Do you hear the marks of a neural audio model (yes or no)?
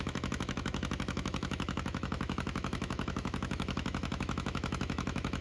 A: yes